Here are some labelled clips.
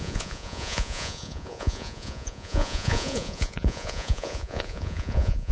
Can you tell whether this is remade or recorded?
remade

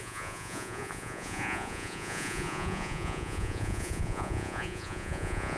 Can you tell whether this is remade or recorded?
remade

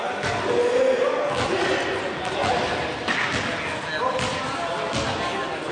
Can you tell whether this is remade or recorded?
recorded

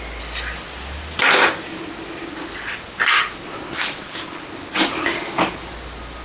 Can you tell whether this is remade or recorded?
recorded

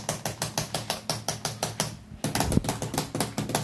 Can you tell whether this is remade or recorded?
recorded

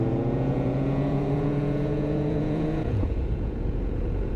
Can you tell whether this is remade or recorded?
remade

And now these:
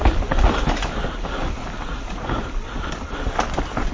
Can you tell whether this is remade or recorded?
recorded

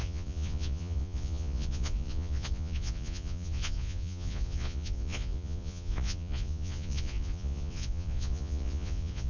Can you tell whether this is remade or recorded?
remade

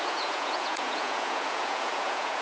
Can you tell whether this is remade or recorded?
remade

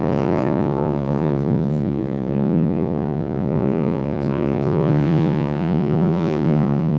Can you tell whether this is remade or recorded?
remade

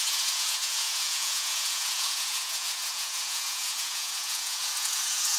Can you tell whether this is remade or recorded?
remade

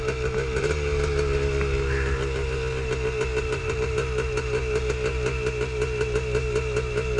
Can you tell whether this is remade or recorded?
recorded